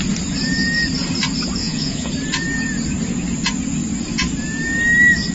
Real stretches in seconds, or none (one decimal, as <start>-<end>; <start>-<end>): 0.0-1.6; 2.1-5.3